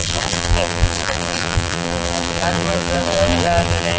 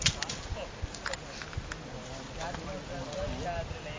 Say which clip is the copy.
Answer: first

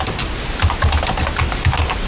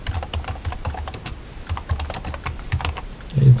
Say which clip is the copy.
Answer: second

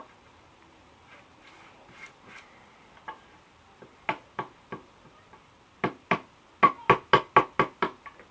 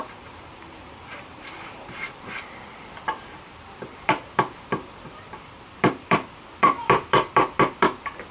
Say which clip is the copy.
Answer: second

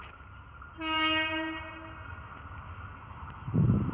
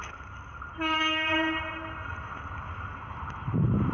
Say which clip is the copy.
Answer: second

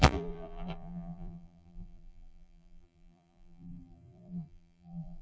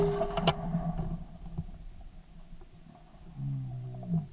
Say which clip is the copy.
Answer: first